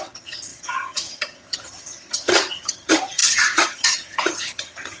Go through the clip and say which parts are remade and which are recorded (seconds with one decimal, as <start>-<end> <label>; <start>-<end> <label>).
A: 0.0-5.0 remade